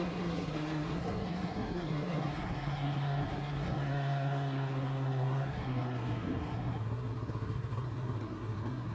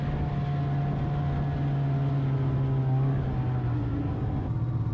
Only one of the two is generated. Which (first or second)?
first